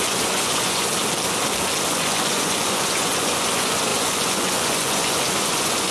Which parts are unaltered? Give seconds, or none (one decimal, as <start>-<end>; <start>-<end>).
0.9-1.9